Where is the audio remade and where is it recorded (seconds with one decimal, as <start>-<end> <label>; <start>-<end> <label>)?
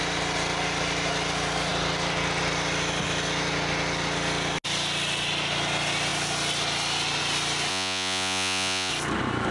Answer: 0.0-7.7 recorded; 7.7-8.9 remade; 8.9-9.5 recorded